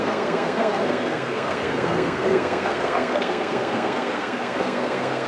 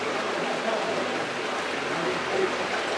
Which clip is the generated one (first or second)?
first